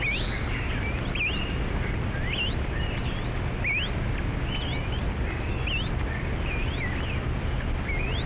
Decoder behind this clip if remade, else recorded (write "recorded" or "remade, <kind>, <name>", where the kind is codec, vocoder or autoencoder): recorded